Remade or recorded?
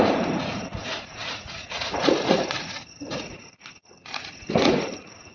remade